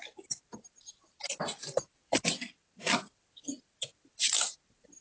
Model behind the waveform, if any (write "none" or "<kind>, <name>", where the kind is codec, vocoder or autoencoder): vocoder, BigVGAN v2